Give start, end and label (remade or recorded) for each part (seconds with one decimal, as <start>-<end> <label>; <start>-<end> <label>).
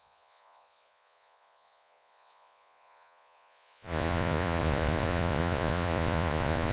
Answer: 0.0-6.7 remade